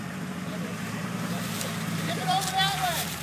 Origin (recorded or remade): remade